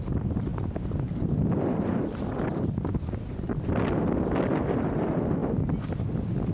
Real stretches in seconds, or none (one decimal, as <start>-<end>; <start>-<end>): 0.0-6.5